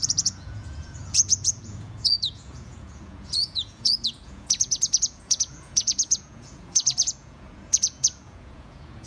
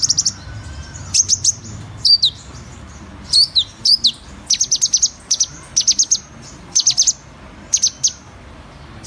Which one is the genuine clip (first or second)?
second